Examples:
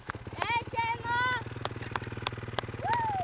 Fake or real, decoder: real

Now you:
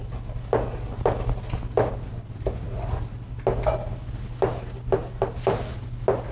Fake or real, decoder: real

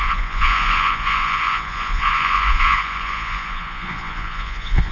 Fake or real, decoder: fake, vocoder, Vocos